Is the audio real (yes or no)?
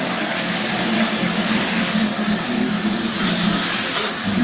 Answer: no